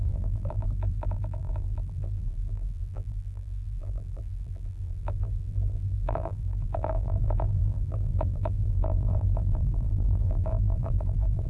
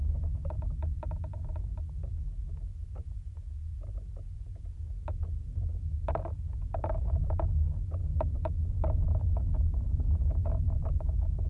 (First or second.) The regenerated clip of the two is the first